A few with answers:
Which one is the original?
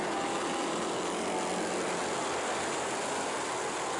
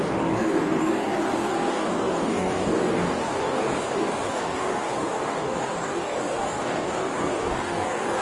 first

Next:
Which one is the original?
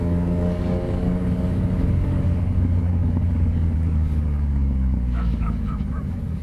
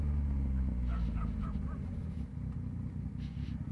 second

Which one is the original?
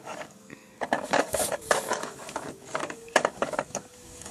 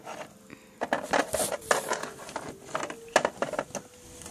second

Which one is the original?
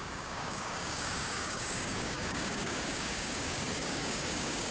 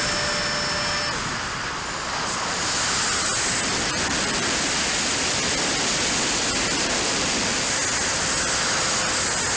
second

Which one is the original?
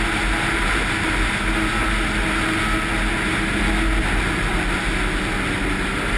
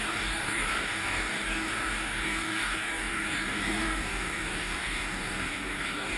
first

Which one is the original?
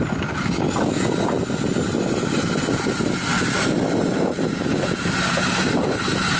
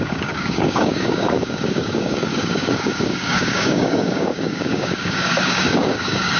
first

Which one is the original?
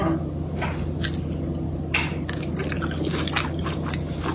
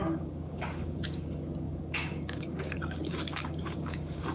first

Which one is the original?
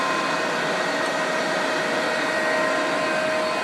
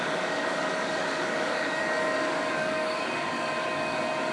first